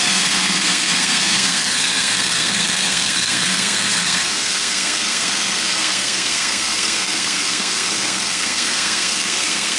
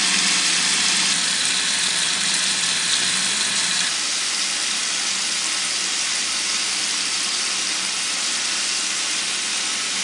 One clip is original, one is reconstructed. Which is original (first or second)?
second